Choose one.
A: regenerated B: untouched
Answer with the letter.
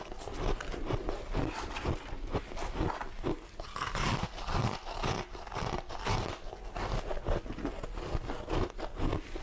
B